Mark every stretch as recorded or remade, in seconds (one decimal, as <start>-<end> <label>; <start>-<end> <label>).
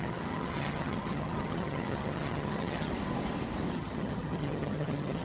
0.0-2.9 remade; 2.9-3.7 recorded; 3.7-5.2 remade